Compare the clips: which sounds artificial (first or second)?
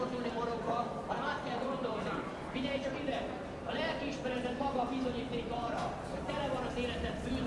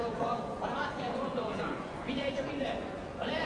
second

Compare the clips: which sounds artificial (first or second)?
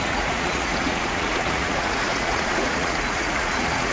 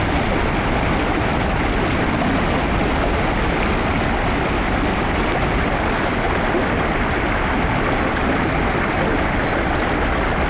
first